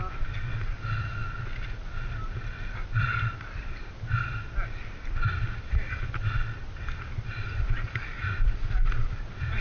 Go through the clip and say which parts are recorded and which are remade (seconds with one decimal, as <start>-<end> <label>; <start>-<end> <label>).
0.0-9.6 recorded